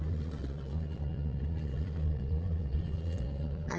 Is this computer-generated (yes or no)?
yes